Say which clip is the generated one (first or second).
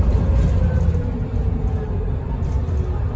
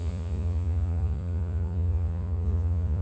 second